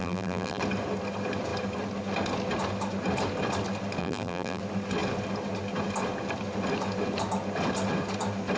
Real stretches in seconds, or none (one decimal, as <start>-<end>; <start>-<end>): 0.6-4.0; 4.6-8.6